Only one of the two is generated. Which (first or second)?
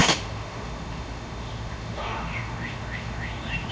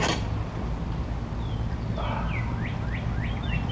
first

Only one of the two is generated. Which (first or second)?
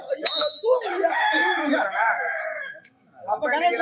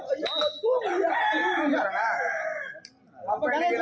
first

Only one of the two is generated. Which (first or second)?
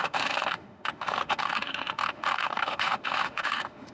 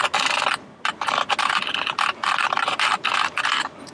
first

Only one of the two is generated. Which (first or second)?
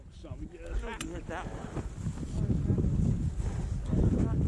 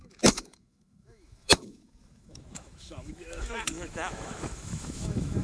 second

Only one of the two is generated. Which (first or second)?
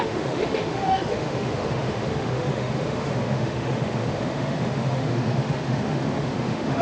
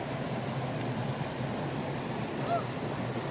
first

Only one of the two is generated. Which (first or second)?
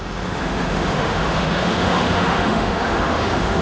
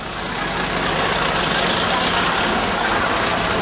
first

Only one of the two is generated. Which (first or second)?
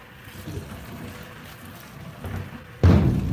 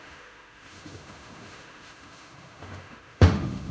second